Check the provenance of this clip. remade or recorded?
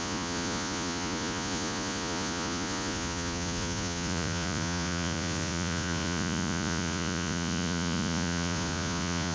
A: remade